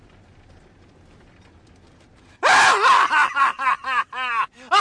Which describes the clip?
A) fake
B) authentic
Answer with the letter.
B